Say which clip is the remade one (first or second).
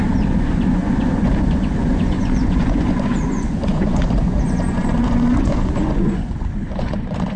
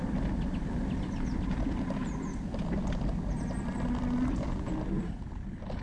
first